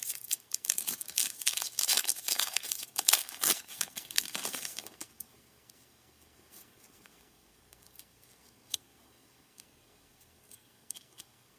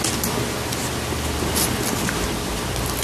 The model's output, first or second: first